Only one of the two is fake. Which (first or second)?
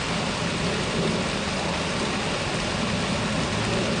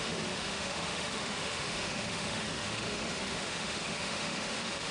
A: second